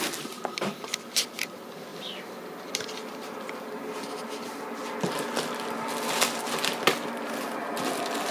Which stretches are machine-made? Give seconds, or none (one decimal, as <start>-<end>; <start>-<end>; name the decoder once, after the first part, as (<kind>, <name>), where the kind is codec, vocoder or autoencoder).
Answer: none